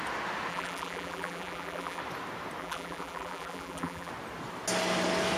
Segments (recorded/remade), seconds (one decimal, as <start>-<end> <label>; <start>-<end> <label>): 0.0-0.5 recorded; 0.5-2.0 remade; 2.0-2.6 recorded; 2.6-4.1 remade; 4.1-5.4 recorded